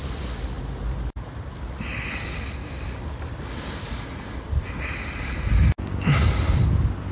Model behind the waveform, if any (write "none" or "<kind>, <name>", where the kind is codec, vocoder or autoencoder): none